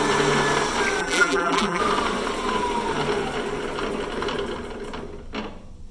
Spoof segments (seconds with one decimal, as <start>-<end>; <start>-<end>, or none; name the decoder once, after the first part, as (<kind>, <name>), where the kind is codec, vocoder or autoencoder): 1.0-1.8 (vocoder, BigVGAN v2)